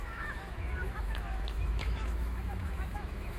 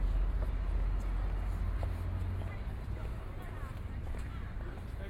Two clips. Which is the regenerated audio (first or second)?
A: first